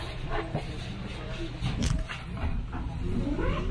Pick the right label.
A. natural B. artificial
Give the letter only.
A